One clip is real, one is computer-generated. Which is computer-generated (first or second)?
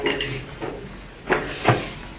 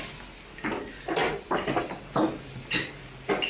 first